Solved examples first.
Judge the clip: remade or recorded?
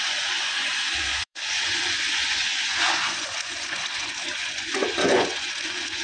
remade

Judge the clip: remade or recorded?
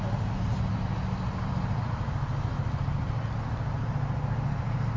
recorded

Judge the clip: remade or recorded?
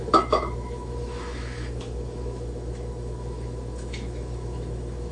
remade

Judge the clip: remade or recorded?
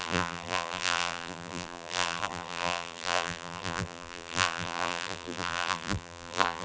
remade